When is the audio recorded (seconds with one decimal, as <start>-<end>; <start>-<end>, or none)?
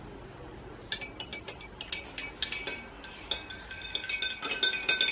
0.0-5.1